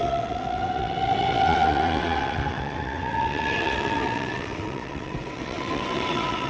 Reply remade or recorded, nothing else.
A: remade